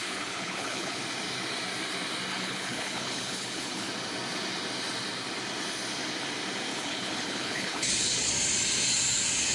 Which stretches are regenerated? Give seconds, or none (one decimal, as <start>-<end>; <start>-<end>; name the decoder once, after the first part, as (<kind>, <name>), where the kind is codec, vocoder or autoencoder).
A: 0.0-1.0 (codec, HILCodec); 2.3-3.9; 6.7-8.3